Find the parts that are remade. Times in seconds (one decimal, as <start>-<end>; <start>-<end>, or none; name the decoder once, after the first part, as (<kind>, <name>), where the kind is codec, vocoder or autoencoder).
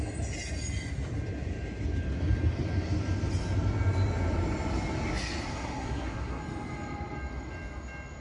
5.5-6.4 (codec, SNAC)